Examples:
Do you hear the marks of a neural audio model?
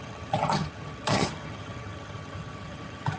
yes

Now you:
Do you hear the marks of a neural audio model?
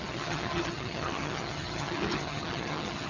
yes